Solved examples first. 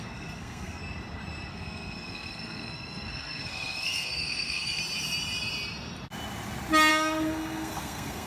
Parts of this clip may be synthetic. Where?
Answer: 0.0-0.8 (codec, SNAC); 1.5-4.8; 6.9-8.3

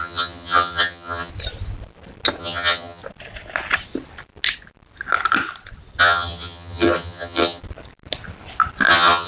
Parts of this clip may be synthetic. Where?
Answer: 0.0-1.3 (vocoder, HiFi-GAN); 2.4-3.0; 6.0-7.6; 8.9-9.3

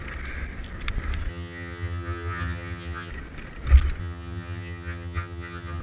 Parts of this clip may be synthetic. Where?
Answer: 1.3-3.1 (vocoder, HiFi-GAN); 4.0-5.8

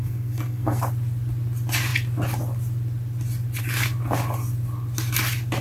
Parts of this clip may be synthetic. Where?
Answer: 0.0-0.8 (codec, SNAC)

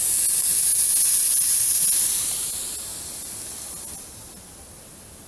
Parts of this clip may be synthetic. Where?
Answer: none